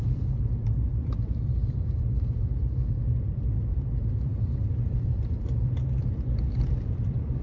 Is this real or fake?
fake